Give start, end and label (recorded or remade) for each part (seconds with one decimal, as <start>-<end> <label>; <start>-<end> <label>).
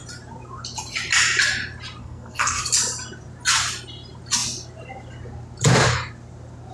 0.0-2.0 recorded; 2.0-2.6 remade; 2.6-6.7 recorded